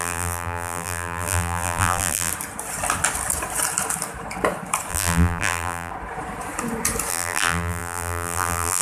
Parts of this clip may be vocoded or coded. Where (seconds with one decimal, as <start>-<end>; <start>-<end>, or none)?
0.0-2.3; 4.9-5.9; 7.1-8.8